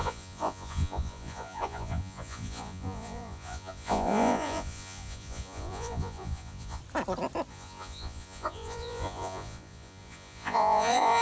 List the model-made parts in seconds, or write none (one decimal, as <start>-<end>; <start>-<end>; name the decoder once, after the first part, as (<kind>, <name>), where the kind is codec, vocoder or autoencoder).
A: 0.0-6.8 (vocoder, Vocos); 7.5-11.2